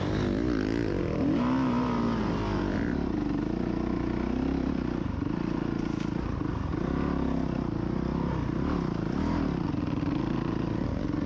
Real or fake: real